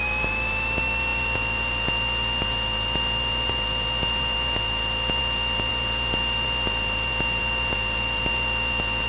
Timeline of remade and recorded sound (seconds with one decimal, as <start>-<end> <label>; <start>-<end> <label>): 0.0-9.1 recorded